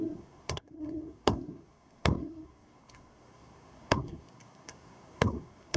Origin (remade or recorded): remade